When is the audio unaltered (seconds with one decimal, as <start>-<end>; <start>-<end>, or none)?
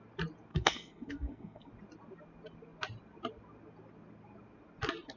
0.0-0.5; 1.7-5.2